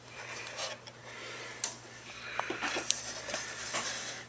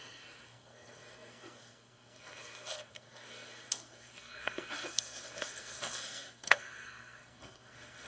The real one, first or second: first